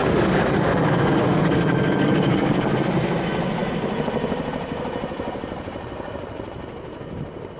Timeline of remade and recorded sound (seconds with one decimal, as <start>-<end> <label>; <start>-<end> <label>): 0.0-2.8 remade; 2.8-7.6 recorded